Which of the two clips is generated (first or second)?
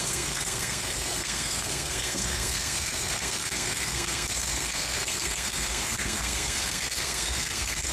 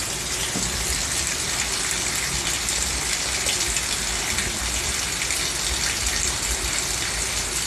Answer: first